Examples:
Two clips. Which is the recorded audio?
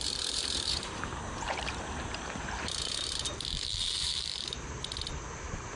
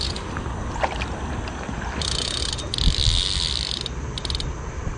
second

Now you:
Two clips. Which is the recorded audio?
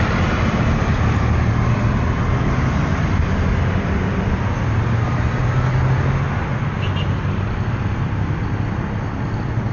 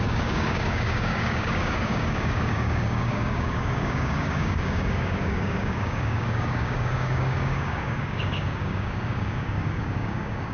first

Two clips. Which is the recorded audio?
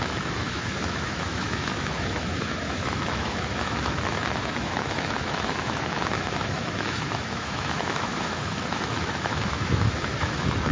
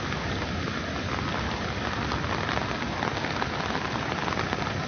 second